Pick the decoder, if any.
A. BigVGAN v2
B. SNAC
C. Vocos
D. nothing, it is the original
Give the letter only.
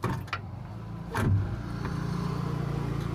D